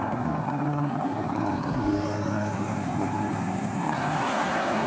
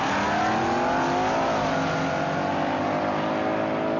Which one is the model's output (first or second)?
first